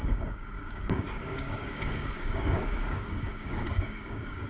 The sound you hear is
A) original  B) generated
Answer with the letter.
B